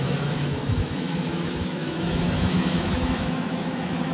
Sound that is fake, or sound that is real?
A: fake